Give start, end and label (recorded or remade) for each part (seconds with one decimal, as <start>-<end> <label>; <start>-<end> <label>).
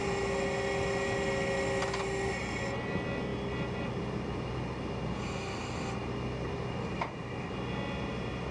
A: 0.0-8.5 recorded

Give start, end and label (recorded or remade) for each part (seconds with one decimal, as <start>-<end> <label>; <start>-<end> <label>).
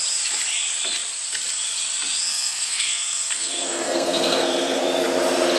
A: 0.0-2.3 recorded; 2.3-4.8 remade; 4.8-5.6 recorded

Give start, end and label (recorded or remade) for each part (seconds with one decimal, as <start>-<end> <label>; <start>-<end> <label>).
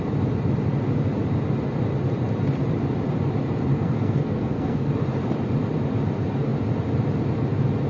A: 0.0-3.7 recorded; 3.7-4.9 remade; 4.9-7.9 recorded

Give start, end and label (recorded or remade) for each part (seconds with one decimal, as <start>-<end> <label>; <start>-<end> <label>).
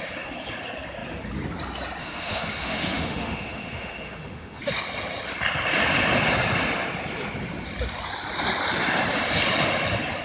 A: 0.0-2.0 recorded; 2.0-4.6 remade; 4.6-10.2 recorded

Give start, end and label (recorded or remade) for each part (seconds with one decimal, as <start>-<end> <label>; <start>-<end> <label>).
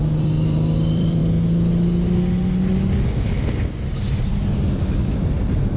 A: 0.0-1.2 remade; 1.2-4.3 recorded; 4.3-5.8 remade